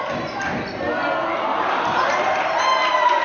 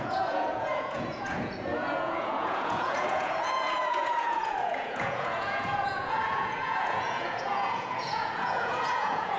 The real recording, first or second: first